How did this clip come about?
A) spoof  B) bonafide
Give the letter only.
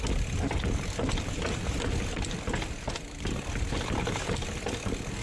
B